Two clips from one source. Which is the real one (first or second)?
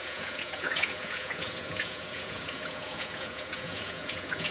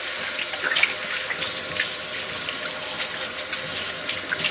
second